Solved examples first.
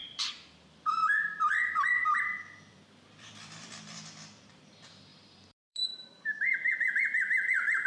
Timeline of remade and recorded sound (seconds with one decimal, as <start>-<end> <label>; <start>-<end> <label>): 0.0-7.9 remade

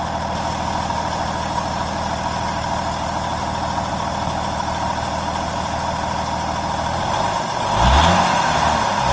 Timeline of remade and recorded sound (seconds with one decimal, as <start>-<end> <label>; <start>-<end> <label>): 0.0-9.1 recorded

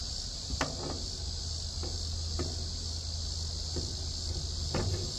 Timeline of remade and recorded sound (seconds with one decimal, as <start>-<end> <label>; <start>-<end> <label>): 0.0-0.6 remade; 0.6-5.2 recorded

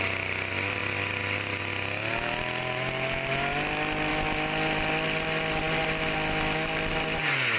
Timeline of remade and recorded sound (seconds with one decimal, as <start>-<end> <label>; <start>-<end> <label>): 0.0-7.6 recorded